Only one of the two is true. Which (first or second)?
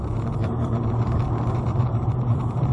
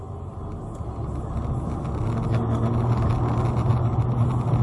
second